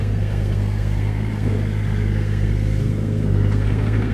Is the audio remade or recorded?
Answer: remade